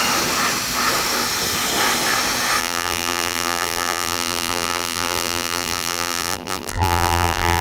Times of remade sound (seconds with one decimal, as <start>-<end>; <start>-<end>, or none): 2.6-7.6

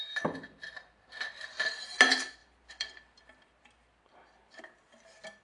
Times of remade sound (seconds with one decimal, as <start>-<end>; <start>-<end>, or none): 2.4-4.6

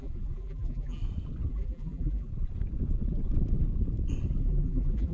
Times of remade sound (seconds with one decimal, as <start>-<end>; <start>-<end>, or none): 0.0-1.0; 1.5-2.3; 4.4-5.1

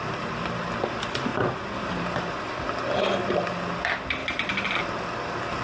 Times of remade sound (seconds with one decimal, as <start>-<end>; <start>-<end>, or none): 1.3-2.2; 4.2-4.8

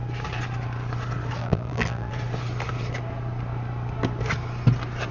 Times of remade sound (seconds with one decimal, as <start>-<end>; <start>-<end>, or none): 1.4-2.1

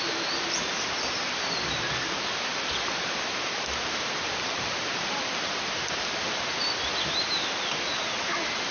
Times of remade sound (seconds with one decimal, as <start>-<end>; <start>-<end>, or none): 0.0-8.7

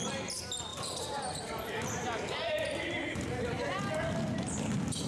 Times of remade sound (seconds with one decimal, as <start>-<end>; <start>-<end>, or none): 0.7-3.8

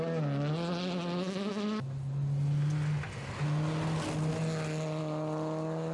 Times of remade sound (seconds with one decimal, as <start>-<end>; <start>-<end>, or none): none